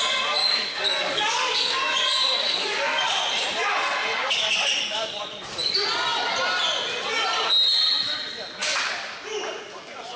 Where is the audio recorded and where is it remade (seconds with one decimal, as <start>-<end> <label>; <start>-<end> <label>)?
0.0-0.4 recorded; 0.4-3.2 remade; 3.2-4.2 recorded; 4.2-5.2 remade; 5.2-10.2 recorded